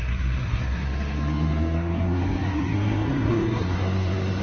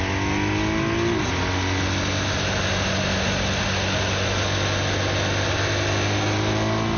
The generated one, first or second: first